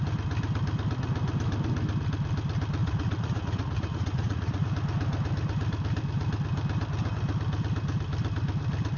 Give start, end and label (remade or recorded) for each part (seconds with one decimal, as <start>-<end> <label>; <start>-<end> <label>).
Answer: 0.0-2.8 recorded; 2.8-4.7 remade; 4.7-9.0 recorded